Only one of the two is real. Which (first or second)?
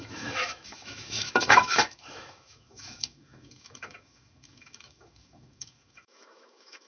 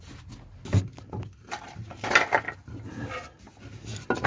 second